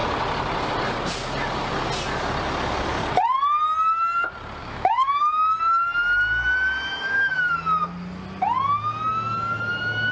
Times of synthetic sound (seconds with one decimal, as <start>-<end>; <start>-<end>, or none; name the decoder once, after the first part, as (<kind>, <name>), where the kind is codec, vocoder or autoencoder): 4.6-5.6 (autoencoder, DAC-VAE); 6.9-7.5